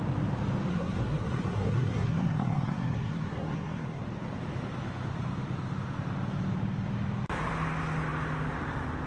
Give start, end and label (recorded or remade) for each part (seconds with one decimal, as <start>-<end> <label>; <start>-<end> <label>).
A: 0.0-0.7 recorded; 0.7-4.0 remade; 4.0-9.1 recorded